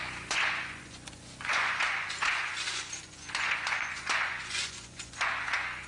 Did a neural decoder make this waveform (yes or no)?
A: yes